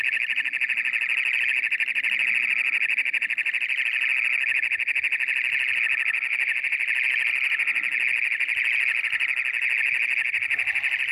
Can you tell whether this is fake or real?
real